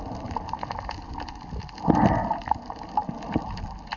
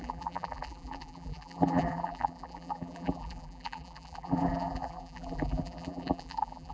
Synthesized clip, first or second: second